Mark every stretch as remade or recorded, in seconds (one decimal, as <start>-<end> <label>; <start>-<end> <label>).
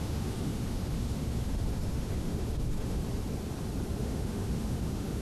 0.0-3.0 remade; 3.0-4.0 recorded; 4.0-5.2 remade